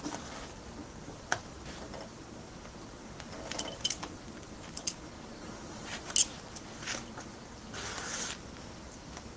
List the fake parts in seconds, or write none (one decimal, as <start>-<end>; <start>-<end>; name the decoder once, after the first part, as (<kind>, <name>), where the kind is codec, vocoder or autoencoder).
none